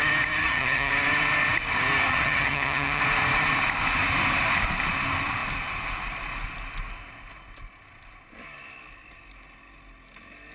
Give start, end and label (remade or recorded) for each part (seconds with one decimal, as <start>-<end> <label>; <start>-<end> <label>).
0.0-0.4 recorded; 0.4-0.9 remade; 0.9-2.1 recorded; 2.1-3.0 remade; 3.0-10.5 recorded